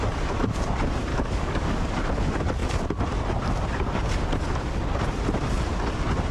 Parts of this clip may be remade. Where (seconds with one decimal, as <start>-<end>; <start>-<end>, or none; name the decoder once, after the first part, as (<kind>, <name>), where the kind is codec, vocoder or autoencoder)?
1.1-1.9 (codec, DAC)